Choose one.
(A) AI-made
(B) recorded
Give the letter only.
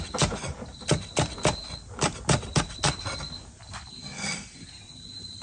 B